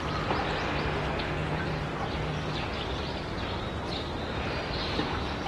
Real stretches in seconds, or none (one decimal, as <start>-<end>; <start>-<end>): 0.0-1.4; 2.1-5.5